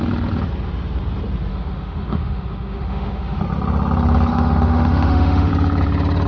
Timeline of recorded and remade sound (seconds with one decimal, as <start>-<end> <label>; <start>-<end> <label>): 0.0-1.5 recorded; 1.5-3.4 remade; 3.4-4.3 recorded; 4.3-5.5 remade; 5.5-6.3 recorded